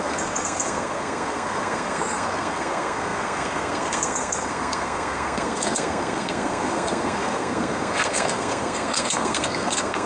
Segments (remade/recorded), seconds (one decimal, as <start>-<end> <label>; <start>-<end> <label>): 0.0-10.1 remade